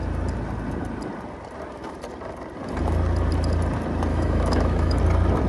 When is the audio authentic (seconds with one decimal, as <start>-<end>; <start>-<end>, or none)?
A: 0.0-4.1; 5.0-5.5